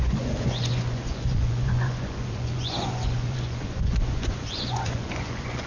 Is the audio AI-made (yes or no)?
yes